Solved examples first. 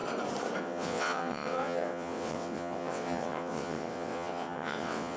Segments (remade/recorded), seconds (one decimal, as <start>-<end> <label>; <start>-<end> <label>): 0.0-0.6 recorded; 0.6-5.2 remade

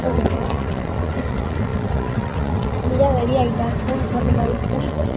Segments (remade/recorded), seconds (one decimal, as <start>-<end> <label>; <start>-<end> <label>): 0.0-2.9 remade; 2.9-4.2 recorded; 4.2-5.2 remade

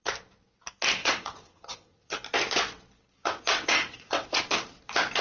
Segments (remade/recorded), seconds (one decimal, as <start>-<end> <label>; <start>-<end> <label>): 0.0-1.0 recorded; 1.0-2.1 remade; 2.1-3.2 recorded; 3.2-4.4 remade; 4.4-5.2 recorded